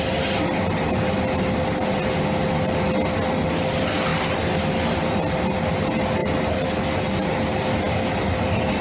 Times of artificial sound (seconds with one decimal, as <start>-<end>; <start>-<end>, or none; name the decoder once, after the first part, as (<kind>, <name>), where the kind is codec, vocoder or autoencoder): none